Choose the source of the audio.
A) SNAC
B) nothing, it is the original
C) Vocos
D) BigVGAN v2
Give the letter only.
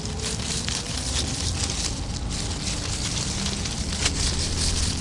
B